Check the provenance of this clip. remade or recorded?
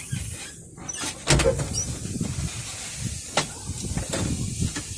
recorded